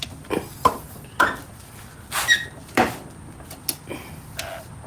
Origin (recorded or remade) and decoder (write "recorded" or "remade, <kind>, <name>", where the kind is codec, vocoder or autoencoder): recorded